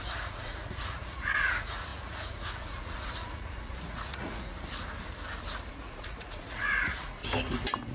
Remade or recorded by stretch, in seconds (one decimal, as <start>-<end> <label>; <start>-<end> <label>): 0.0-4.5 remade; 4.5-5.7 recorded; 5.7-7.2 remade; 7.2-7.9 recorded

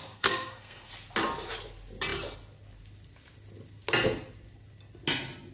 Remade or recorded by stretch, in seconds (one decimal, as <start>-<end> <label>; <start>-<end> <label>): 0.0-0.9 remade; 0.9-5.5 recorded

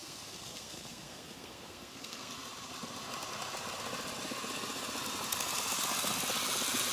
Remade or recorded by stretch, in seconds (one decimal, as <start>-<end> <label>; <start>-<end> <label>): 0.0-2.3 remade; 2.3-6.9 recorded

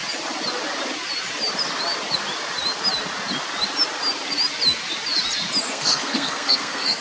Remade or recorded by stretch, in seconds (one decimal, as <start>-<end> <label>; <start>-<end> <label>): 0.0-5.7 recorded; 5.7-7.0 remade

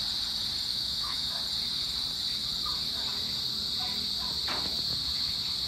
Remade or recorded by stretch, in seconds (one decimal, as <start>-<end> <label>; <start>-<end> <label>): 0.0-0.7 recorded; 0.7-1.3 remade; 1.3-5.7 recorded